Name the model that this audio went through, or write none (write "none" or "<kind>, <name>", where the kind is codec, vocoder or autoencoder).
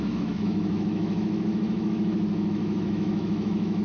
autoencoder, DAC-VAE